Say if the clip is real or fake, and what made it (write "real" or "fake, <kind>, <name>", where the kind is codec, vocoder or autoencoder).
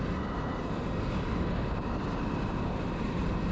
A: real